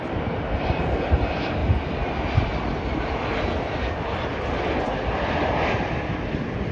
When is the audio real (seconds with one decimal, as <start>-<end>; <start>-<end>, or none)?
0.0-6.7